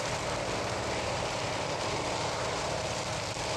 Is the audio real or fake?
real